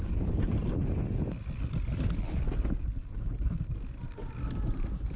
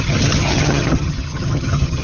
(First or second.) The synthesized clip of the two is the second